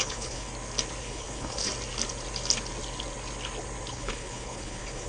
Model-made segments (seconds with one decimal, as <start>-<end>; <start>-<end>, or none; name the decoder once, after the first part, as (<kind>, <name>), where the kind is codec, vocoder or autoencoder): 0.0-0.5 (codec, HILCodec); 1.0-1.7; 3.9-5.1